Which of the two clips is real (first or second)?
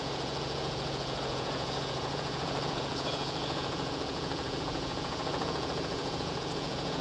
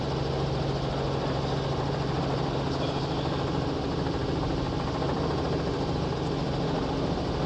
second